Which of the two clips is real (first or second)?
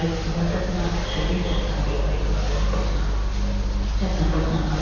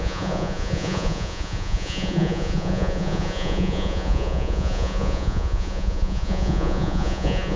first